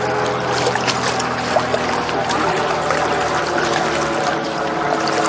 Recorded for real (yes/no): yes